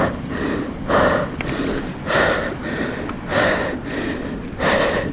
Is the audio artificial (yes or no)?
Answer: yes